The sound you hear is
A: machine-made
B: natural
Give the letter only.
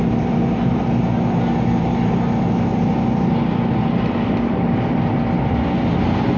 A